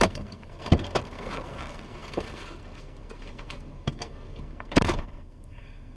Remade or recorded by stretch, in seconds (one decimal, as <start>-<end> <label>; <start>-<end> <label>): 0.0-6.0 remade